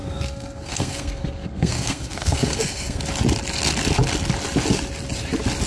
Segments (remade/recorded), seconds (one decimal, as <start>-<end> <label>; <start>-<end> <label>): 0.0-3.0 remade; 3.0-5.7 recorded